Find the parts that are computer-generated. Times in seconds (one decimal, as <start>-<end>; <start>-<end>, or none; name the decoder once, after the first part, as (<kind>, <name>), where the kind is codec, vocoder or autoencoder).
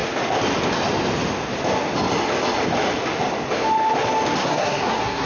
4.4-5.3 (codec, SNAC)